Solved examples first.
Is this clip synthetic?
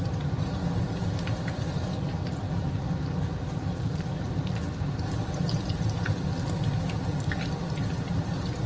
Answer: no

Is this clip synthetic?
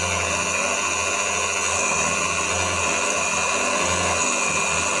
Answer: no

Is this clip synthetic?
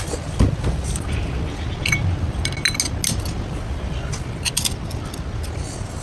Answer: no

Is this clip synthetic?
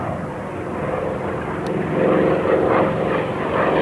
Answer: no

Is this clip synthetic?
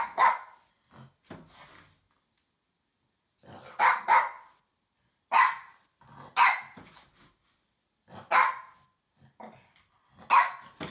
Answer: no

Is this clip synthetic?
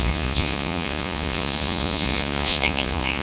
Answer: yes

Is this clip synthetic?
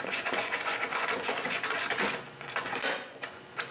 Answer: yes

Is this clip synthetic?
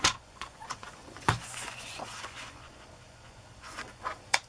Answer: yes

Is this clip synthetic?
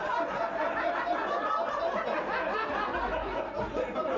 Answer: no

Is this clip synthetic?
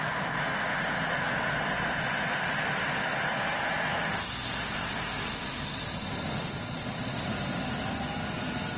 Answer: no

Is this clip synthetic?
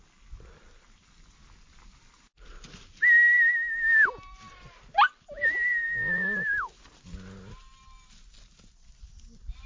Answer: no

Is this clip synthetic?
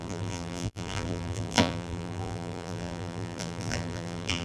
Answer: yes